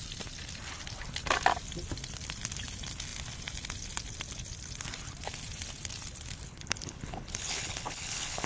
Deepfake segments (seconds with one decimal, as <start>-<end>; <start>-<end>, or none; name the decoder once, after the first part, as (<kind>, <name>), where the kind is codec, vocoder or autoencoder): 6.5-8.5 (codec, HILCodec)